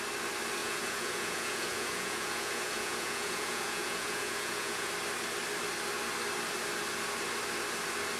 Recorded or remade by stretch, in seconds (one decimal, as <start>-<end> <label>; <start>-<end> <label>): 0.0-0.6 recorded; 0.6-4.9 remade; 4.9-8.2 recorded